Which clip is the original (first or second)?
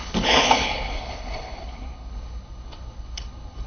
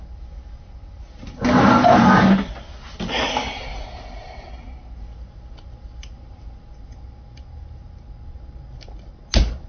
second